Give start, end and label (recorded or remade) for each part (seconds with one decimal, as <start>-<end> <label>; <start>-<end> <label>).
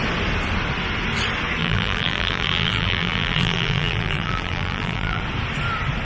0.0-1.6 recorded; 1.6-5.2 remade; 5.2-6.0 recorded